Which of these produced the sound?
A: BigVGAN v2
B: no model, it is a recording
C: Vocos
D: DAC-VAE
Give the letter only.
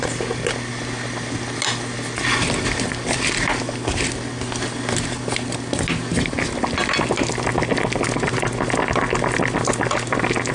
B